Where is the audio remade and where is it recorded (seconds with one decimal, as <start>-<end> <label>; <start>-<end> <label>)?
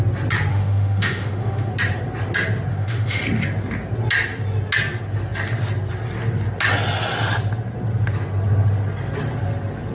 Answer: 0.0-0.5 recorded; 0.5-1.7 remade; 1.7-2.7 recorded; 2.7-3.2 remade; 3.2-9.9 recorded